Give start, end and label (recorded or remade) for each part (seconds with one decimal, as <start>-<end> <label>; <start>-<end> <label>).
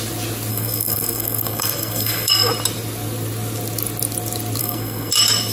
0.0-0.5 recorded; 0.5-2.5 remade; 2.5-4.6 recorded; 4.6-5.1 remade; 5.1-5.5 recorded